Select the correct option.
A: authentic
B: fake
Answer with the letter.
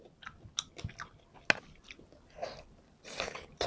A